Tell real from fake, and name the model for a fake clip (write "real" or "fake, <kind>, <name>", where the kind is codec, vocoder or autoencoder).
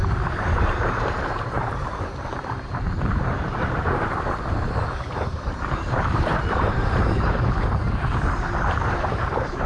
fake, vocoder, BigVGAN v2